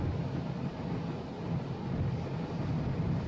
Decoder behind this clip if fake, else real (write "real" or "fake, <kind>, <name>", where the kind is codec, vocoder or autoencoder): real